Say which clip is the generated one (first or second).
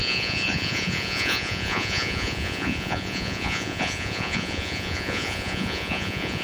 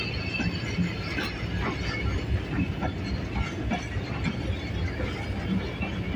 first